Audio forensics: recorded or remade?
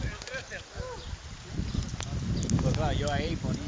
recorded